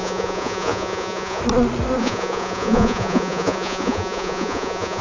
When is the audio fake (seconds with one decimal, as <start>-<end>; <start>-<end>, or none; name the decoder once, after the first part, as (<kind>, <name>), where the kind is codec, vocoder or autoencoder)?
0.0-1.4 (vocoder, Vocos); 2.0-5.0